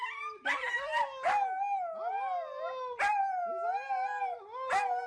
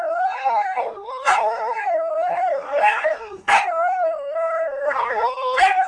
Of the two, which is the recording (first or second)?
first